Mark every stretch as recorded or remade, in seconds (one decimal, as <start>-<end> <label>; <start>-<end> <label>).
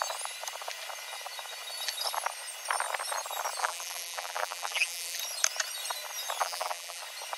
0.0-3.6 recorded; 3.6-5.2 remade; 5.2-6.4 recorded; 6.4-7.0 remade; 7.0-7.4 recorded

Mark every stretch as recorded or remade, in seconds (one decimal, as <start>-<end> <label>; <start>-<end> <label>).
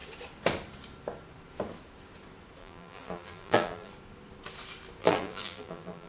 0.0-2.6 recorded; 2.6-3.9 remade; 3.9-5.0 recorded; 5.0-6.1 remade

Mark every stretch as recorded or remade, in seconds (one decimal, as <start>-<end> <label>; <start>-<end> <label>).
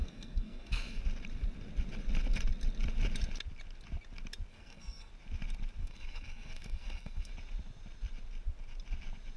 0.0-1.0 remade; 1.0-4.5 recorded; 4.5-5.1 remade; 5.1-5.8 recorded; 5.8-7.3 remade; 7.3-9.4 recorded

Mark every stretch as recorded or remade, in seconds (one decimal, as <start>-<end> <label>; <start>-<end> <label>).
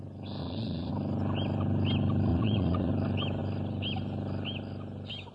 0.0-0.4 recorded; 0.4-0.9 remade; 0.9-2.3 recorded; 2.3-2.9 remade; 2.9-5.3 recorded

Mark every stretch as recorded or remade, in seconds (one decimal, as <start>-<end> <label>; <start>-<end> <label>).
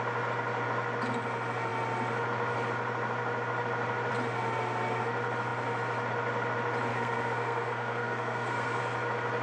0.0-6.9 recorded; 6.9-8.8 remade; 8.8-9.4 recorded